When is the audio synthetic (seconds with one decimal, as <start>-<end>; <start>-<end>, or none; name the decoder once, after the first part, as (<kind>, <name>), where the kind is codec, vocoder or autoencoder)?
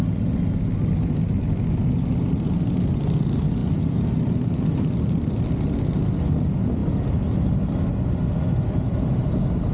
none